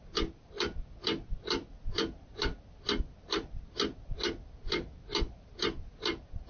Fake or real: real